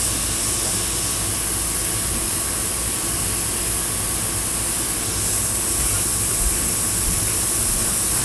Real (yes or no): yes